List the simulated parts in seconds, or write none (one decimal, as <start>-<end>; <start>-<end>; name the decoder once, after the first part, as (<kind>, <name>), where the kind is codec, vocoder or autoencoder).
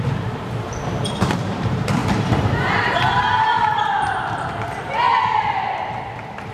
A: 0.0-6.5 (vocoder, BigVGAN v2)